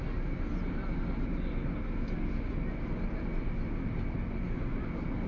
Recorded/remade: recorded